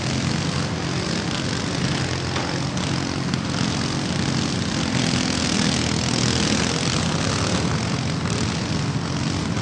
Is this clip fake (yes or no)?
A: no